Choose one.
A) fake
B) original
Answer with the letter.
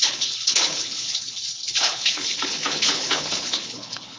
A